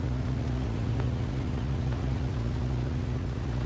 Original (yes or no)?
no